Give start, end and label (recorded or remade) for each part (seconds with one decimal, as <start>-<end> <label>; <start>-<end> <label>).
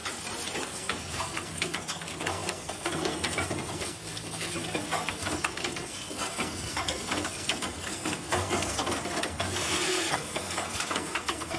0.0-0.6 recorded; 0.6-11.6 remade